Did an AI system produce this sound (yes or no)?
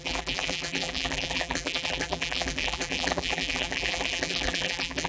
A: yes